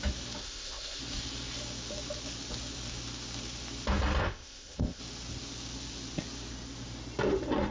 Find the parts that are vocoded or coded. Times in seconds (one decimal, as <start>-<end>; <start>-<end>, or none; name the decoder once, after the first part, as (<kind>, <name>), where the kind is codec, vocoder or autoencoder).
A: 0.4-1.0 (codec, ZipCodec); 4.2-5.0